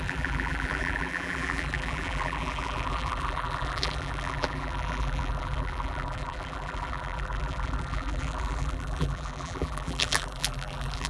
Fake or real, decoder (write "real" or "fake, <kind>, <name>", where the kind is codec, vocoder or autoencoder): fake, vocoder, BigVGAN v2